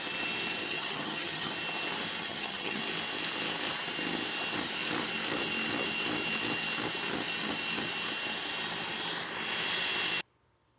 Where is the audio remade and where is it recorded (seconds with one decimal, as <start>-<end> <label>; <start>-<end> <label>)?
0.0-0.6 recorded; 0.6-1.5 remade; 1.5-2.2 recorded; 2.2-2.8 remade; 2.8-10.8 recorded